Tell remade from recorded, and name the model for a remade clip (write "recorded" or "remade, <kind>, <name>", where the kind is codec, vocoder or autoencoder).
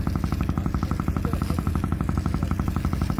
recorded